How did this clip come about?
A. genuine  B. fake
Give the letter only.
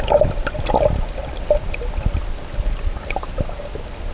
A